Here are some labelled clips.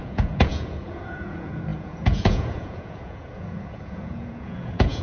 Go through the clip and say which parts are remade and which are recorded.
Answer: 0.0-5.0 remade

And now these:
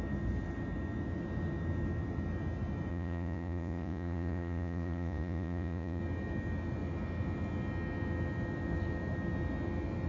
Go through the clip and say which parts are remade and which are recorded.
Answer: 0.0-2.9 recorded; 2.9-6.0 remade; 6.0-10.1 recorded

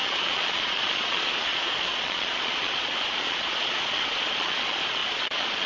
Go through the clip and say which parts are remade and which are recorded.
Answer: 0.0-5.7 remade

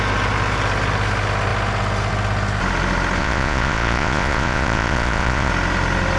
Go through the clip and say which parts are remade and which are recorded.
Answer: 0.0-3.2 recorded; 3.2-5.5 remade; 5.5-6.2 recorded

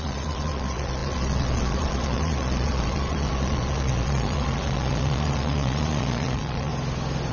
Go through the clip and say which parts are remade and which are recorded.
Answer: 0.0-6.7 remade; 6.7-7.3 recorded

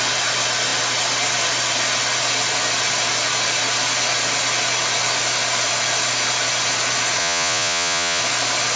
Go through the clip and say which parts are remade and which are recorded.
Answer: 0.0-7.2 recorded; 7.2-8.2 remade; 8.2-8.8 recorded

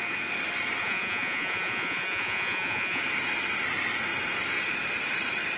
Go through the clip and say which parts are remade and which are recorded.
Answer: 0.0-0.8 recorded; 0.8-3.0 remade; 3.0-5.6 recorded